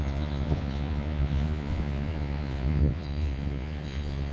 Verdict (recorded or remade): remade